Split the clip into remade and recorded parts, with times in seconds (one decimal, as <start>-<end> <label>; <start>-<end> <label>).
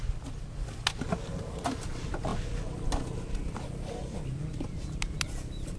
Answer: 0.0-5.8 recorded